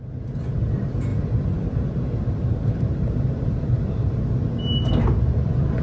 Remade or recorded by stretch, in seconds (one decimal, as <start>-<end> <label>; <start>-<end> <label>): 0.0-1.1 recorded; 1.1-4.5 remade; 4.5-5.8 recorded